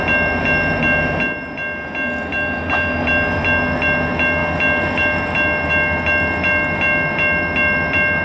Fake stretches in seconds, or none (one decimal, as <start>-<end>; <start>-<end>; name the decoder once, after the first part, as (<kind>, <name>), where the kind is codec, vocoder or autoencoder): none